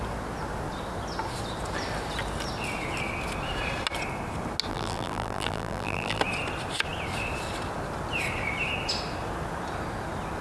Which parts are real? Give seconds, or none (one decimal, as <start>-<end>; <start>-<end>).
0.0-4.7; 6.2-10.4